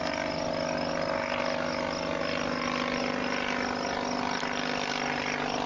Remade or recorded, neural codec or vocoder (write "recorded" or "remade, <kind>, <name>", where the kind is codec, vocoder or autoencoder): recorded